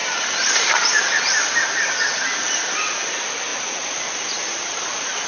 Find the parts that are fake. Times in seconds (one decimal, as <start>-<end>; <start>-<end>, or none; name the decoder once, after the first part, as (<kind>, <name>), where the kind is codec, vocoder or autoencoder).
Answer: none